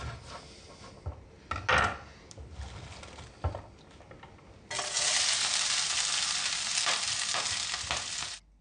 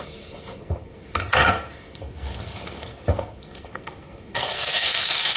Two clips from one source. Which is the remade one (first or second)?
second